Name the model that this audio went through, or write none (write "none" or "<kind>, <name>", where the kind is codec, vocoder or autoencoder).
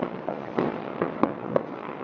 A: vocoder, Vocos